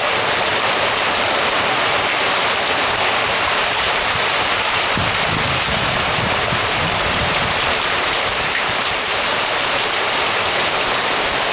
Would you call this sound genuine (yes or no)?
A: no